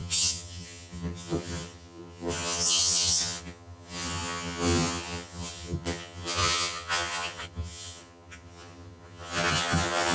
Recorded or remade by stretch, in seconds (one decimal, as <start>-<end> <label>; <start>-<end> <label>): 0.0-10.1 remade